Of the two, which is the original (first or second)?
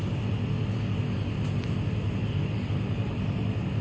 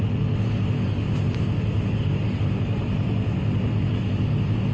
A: second